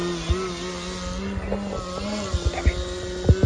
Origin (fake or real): real